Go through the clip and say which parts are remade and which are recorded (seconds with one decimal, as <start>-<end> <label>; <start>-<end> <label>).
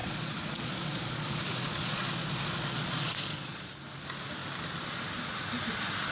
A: 0.0-3.7 remade; 3.7-6.1 recorded